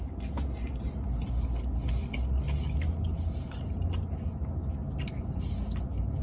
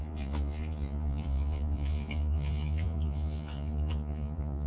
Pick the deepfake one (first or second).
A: second